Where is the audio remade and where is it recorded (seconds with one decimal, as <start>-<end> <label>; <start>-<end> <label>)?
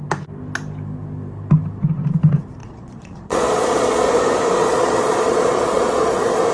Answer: 0.0-2.6 recorded; 2.6-4.1 remade; 4.1-4.6 recorded; 4.6-6.1 remade; 6.1-6.5 recorded